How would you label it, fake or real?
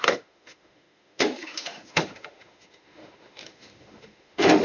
fake